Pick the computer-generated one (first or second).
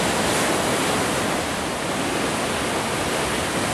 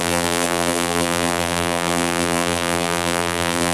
second